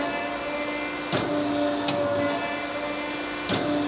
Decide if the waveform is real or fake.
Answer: real